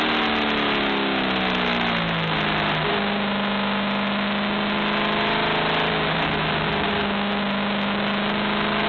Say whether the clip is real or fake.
real